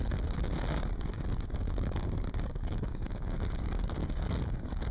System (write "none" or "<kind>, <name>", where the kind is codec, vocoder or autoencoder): codec, DAC